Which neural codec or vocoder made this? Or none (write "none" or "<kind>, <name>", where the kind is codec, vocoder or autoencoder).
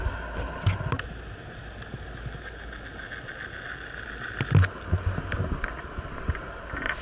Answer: none